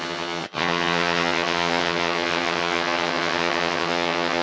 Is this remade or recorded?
remade